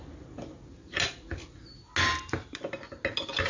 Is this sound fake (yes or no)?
no